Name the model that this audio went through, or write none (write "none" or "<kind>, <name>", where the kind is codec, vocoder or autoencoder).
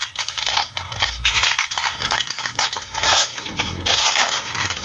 codec, SNAC